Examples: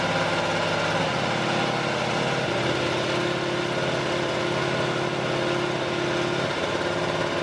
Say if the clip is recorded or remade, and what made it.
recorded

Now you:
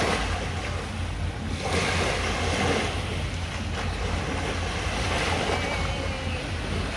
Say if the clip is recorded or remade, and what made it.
recorded